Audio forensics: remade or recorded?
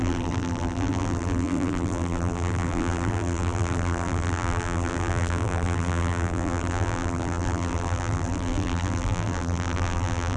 remade